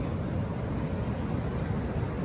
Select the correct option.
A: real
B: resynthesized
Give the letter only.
A